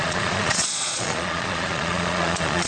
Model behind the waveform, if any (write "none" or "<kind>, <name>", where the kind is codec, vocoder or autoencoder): vocoder, Vocos